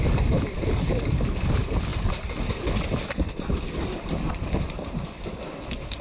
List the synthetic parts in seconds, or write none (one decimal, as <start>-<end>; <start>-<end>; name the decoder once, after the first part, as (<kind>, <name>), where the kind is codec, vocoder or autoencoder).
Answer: none